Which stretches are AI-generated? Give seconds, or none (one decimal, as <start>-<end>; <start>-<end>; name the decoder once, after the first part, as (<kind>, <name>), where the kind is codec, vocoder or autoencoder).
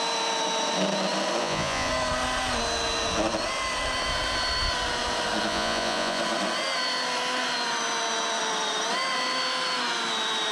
1.4-1.9 (vocoder, Vocos); 5.5-6.2